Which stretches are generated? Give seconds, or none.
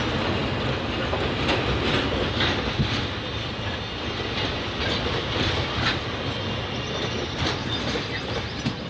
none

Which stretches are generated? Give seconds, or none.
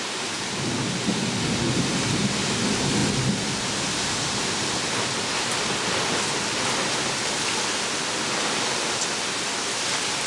none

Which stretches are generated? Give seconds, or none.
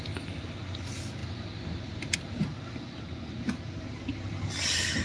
none